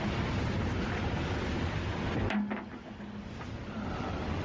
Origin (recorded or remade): recorded